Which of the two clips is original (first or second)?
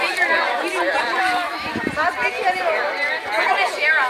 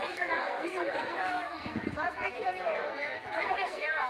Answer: first